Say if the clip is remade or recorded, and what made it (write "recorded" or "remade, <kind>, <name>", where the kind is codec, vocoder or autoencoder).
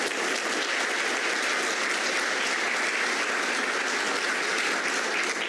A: recorded